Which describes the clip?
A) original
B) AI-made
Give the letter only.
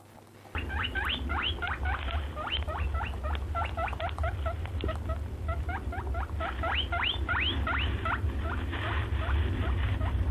A